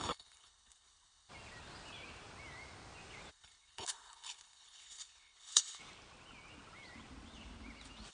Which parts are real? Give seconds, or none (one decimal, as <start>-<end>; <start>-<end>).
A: 1.3-3.3; 5.8-8.1